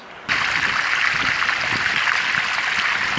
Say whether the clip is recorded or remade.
recorded